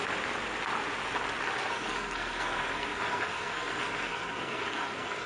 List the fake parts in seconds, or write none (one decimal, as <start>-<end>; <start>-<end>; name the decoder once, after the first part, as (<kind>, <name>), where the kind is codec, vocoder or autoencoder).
1.7-5.3 (codec, SNAC)